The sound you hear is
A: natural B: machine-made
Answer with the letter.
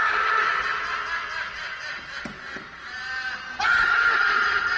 A